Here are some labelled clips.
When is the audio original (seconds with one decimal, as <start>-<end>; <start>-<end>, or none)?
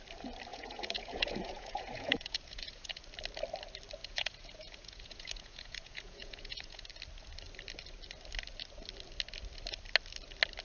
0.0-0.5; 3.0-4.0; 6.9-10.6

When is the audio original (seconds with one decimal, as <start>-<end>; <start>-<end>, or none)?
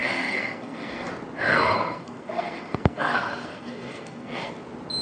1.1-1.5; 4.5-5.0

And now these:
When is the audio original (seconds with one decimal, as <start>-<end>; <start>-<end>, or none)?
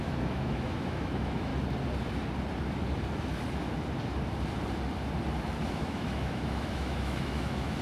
1.5-5.7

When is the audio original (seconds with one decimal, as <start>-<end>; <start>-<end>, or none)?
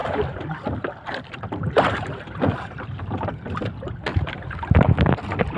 3.4-4.1; 4.8-5.6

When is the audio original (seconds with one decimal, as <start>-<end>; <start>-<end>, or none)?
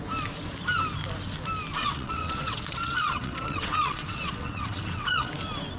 0.0-1.8; 5.3-5.8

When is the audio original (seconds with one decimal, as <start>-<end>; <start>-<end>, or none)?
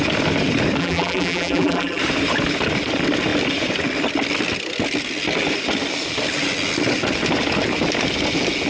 0.0-0.8; 2.0-8.7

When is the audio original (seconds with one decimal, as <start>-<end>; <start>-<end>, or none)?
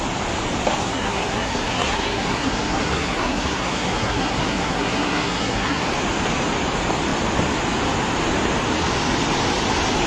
0.0-0.8; 5.9-10.1